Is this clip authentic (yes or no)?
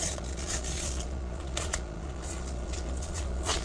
no